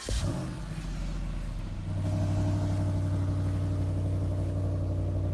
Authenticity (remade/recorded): recorded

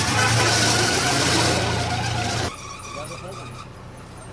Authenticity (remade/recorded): recorded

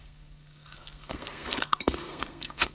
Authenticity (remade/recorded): remade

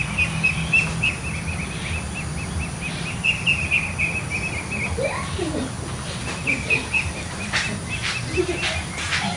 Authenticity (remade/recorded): recorded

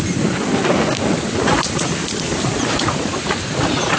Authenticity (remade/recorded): recorded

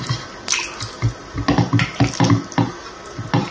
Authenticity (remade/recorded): recorded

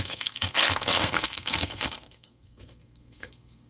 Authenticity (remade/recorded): remade